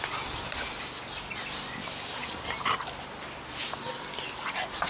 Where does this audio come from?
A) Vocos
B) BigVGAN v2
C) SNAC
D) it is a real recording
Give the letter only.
D